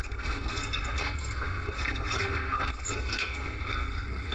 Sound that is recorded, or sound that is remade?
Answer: remade